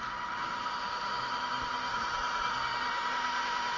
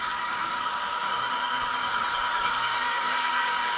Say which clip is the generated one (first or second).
second